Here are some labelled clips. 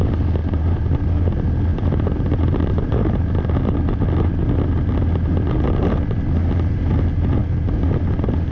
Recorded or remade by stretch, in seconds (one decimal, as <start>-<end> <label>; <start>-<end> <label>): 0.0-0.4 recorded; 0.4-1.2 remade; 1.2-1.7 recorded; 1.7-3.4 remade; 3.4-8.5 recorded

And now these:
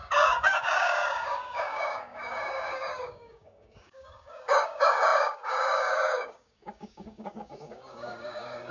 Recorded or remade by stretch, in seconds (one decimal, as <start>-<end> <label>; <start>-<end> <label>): 0.0-8.7 remade

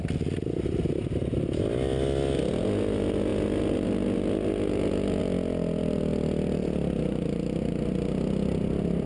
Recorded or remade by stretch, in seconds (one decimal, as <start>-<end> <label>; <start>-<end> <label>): 0.0-9.1 recorded